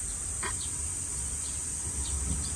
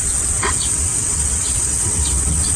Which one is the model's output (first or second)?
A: second